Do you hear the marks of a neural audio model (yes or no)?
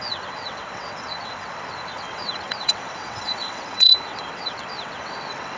yes